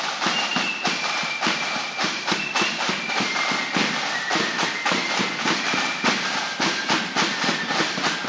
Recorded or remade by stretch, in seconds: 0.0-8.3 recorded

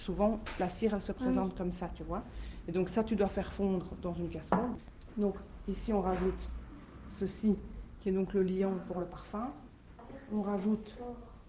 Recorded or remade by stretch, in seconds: 0.0-6.7 recorded; 6.7-9.0 remade; 9.0-11.5 recorded